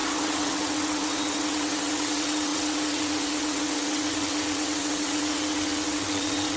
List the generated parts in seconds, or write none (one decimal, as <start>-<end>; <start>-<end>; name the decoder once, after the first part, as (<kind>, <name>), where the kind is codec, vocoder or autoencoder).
0.0-6.6 (vocoder, WaveNeXt)